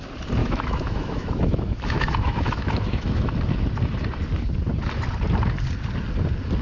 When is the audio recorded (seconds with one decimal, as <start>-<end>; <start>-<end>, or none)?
0.0-0.4; 3.3-6.6